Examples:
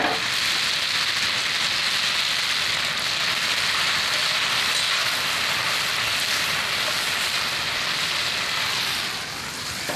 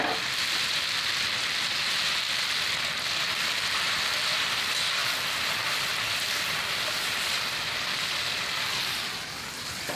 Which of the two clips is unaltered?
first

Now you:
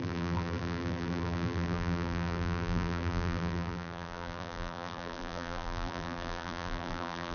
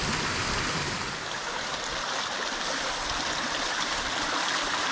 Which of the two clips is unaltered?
second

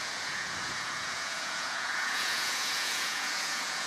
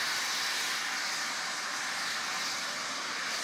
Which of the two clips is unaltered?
second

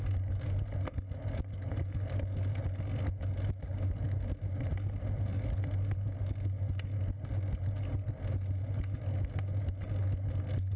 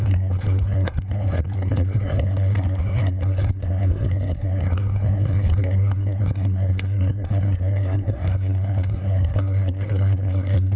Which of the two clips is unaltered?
first